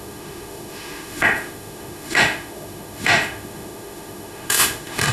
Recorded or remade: remade